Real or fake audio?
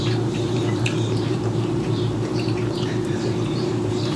fake